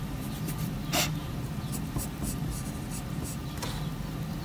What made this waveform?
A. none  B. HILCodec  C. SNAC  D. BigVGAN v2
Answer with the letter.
D